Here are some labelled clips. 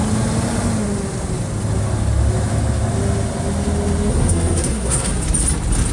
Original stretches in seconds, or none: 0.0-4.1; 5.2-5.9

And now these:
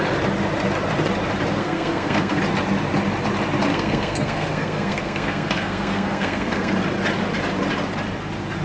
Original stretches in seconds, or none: 0.0-1.6; 2.4-3.7; 6.7-8.6

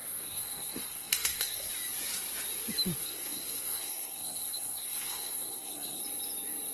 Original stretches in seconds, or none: 1.7-3.0; 6.0-6.7